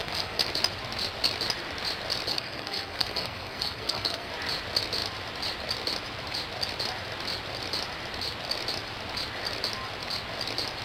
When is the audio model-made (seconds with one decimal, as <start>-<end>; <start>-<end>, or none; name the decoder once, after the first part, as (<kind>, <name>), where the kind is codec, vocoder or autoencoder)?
0.0-0.5 (codec, SNAC); 2.3-4.3